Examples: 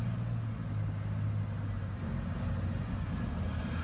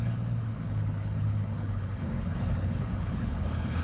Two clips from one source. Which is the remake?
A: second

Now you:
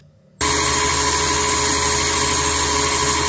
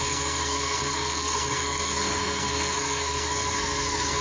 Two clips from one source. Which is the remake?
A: second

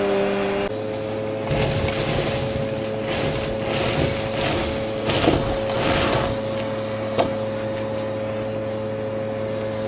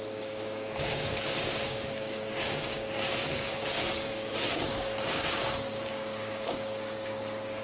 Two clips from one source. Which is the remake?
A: second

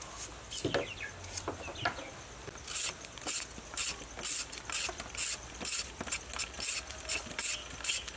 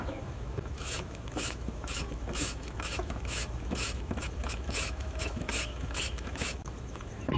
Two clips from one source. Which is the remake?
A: second